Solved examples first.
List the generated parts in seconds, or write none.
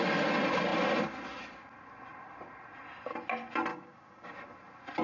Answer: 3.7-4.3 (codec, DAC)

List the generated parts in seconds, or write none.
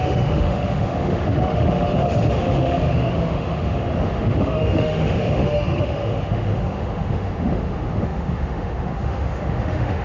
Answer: 0.0-10.0 (autoencoder, DAC-VAE)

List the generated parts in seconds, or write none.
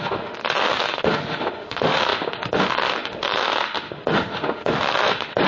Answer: 0.0-0.4 (autoencoder, DAC-VAE); 0.9-5.5